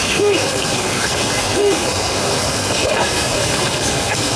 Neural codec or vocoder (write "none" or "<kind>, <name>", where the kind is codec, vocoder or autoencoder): codec, SNAC